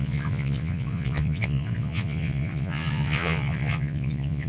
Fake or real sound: fake